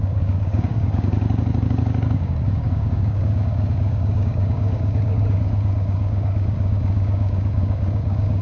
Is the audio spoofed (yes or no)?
yes